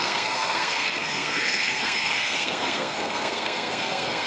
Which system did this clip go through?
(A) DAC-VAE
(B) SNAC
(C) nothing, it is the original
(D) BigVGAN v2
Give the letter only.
B